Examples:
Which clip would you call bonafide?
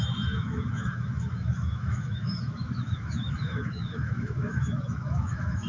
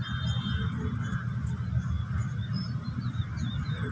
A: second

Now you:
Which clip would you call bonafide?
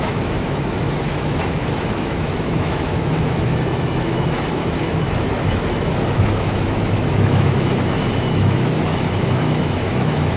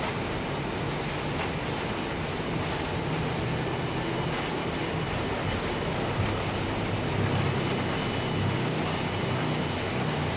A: second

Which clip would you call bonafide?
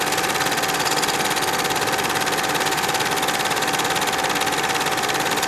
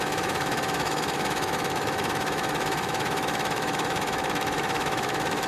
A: first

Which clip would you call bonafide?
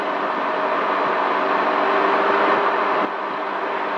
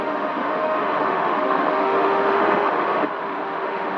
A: first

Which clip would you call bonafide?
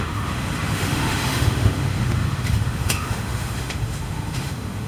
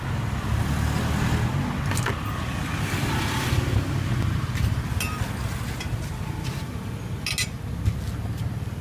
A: second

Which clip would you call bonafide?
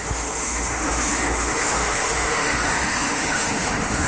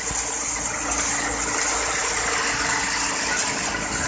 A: second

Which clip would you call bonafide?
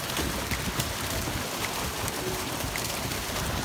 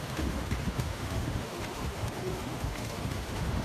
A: first